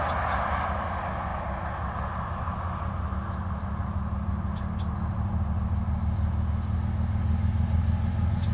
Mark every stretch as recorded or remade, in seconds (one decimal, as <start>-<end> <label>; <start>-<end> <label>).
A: 0.0-8.5 recorded